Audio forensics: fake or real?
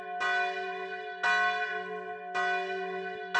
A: real